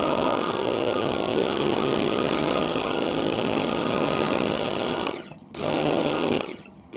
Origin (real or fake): fake